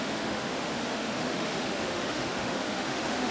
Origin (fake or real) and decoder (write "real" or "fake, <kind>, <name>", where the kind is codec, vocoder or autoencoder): fake, autoencoder, DAC-VAE